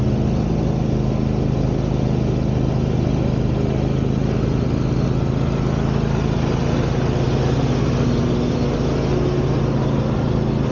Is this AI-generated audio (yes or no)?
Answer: no